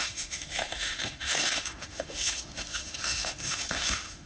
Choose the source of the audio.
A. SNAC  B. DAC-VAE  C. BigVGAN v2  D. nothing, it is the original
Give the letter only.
B